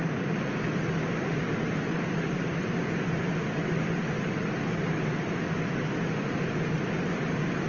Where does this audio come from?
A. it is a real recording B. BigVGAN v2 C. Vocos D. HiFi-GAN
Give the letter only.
A